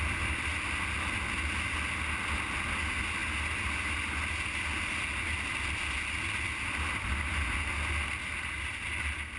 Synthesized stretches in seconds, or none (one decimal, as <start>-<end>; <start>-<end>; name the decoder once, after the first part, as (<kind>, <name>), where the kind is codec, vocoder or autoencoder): none